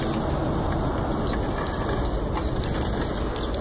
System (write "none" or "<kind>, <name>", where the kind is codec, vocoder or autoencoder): none